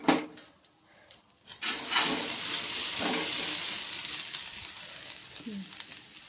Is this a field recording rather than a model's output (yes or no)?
yes